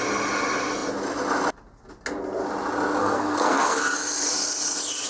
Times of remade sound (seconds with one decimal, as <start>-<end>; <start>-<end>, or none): 3.0-3.8